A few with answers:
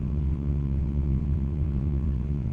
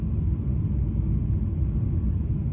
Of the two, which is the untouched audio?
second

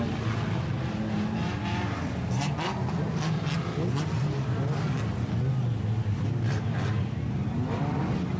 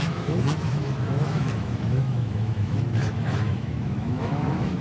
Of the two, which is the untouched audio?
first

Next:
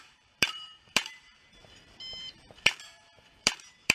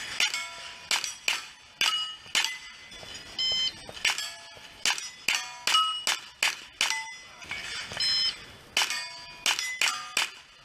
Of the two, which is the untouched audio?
second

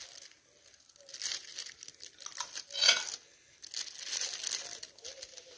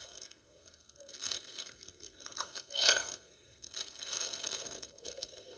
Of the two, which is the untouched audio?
first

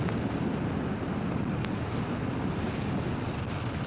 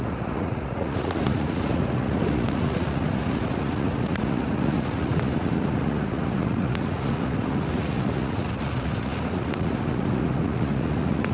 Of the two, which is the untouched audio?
first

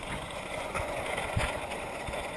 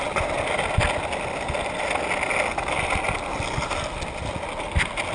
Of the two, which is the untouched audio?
second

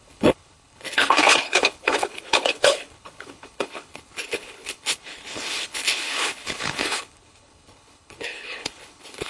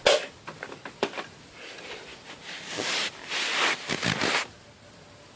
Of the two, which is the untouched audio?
second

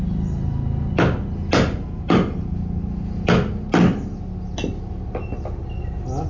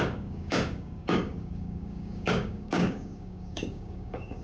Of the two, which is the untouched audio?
first